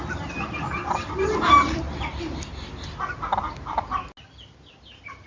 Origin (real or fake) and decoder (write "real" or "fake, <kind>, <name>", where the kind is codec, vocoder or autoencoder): real